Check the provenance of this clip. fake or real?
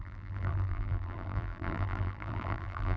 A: fake